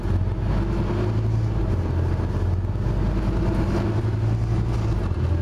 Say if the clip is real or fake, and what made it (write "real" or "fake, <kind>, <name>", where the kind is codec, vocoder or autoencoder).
real